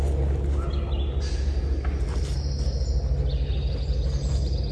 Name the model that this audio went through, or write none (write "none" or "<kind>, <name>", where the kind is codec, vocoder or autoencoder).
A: none